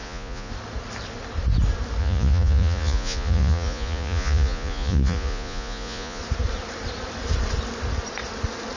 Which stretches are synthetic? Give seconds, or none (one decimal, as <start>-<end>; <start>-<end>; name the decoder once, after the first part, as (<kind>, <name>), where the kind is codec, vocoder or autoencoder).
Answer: 0.0-0.5 (vocoder, Vocos); 2.0-6.2